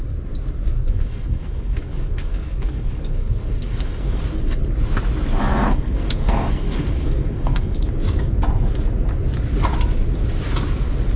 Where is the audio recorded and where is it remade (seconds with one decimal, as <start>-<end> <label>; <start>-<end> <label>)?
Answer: 0.0-0.8 recorded; 0.8-4.2 remade; 4.2-5.5 recorded; 5.5-7.9 remade; 7.9-11.2 recorded